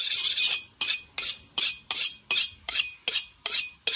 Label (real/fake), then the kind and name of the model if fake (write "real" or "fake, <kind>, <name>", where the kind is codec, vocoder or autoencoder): real